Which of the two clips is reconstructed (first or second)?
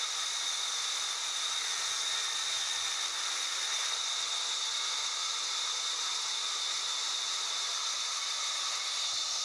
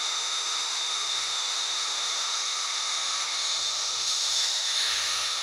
second